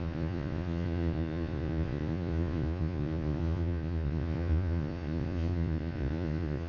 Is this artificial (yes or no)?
yes